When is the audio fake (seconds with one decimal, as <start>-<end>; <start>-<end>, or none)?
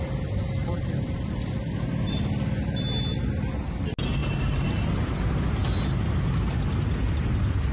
0.6-1.5; 4.2-4.8